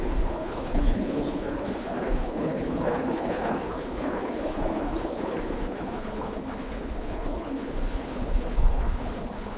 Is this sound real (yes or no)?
no